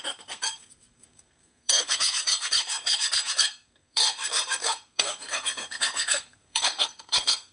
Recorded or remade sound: remade